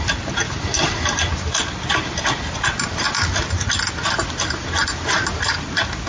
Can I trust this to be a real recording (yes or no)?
yes